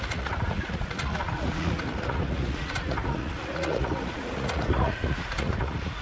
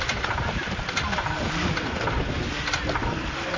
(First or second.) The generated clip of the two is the first